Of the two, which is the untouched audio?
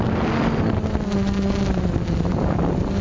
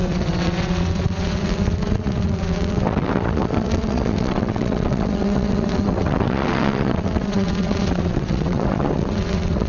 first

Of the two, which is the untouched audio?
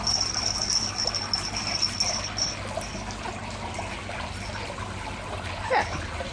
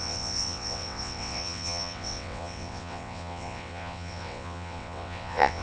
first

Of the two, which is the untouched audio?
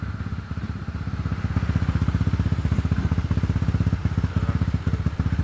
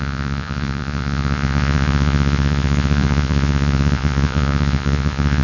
first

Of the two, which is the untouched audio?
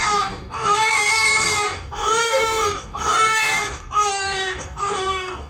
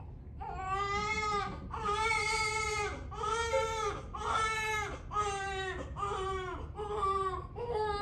second